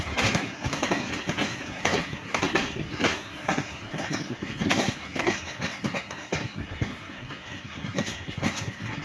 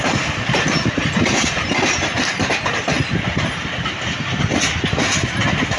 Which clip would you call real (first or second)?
second